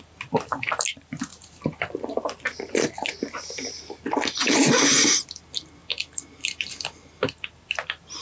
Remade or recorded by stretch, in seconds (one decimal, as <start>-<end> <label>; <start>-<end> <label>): 0.0-8.2 recorded